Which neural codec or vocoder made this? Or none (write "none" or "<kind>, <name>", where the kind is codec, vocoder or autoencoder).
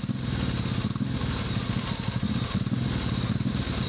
none